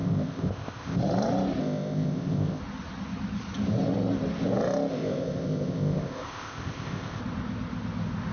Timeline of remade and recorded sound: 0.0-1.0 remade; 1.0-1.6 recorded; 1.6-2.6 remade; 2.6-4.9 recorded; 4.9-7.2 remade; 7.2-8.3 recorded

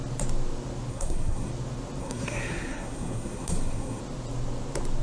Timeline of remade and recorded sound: 0.0-0.9 recorded; 0.9-1.5 remade; 1.5-2.0 recorded; 2.0-4.0 remade; 4.0-5.0 recorded

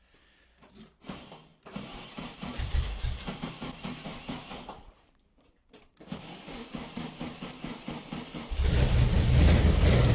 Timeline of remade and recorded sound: 0.0-10.1 remade

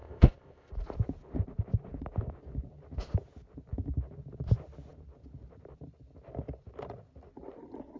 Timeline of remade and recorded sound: 0.0-0.7 remade; 0.7-8.0 recorded

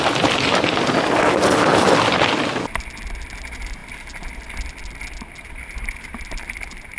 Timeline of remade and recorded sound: 0.0-1.7 remade; 1.7-2.2 recorded; 2.2-3.8 remade; 3.8-6.0 recorded; 6.0-7.0 remade

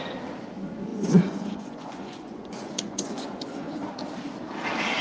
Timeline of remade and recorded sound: 0.0-0.9 recorded; 0.9-3.9 remade; 3.9-5.0 recorded